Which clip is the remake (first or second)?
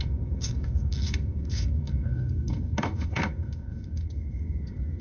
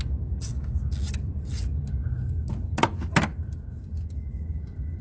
first